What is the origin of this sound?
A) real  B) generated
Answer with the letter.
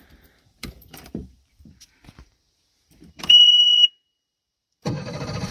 B